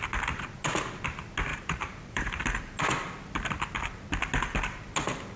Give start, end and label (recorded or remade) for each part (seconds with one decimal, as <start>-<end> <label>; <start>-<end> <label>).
0.0-1.5 recorded; 1.5-2.4 remade; 2.4-5.4 recorded